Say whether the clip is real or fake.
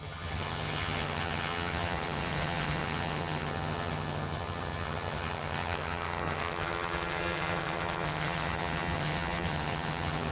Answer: fake